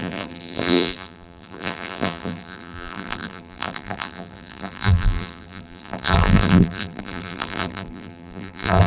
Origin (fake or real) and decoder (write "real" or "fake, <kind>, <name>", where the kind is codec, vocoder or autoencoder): fake, vocoder, BigVGAN v2